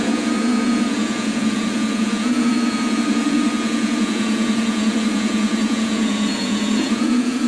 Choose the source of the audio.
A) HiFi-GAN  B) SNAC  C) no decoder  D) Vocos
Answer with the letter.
D